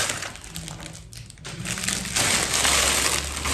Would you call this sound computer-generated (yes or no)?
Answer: no